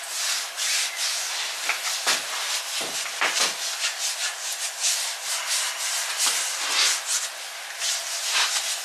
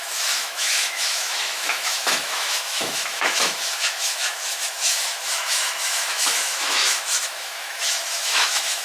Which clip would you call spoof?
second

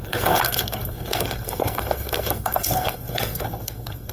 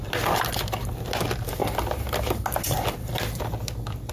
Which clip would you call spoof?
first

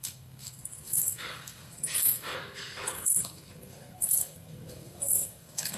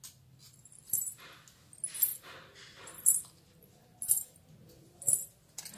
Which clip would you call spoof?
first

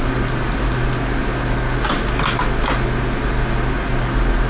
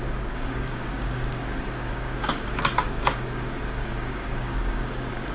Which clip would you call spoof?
second